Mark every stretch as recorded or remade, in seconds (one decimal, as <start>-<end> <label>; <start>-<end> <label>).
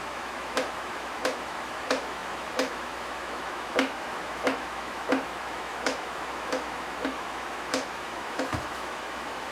0.0-9.5 remade